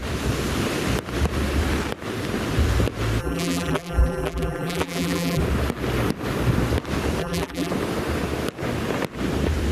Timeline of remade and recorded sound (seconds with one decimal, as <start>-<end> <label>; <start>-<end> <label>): 0.0-3.2 recorded; 3.2-5.4 remade; 5.4-7.2 recorded; 7.2-7.7 remade; 7.7-9.7 recorded